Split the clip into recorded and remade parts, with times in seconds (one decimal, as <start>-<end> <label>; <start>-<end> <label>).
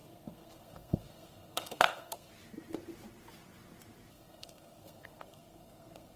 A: 0.0-2.3 remade; 2.3-4.1 recorded; 4.1-6.2 remade